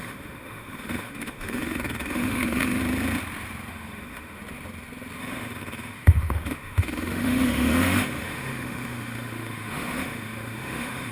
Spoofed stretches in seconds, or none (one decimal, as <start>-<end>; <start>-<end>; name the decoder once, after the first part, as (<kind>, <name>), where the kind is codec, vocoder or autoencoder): 0.0-2.8 (autoencoder, DAC-VAE); 3.7-4.4; 5.2-11.1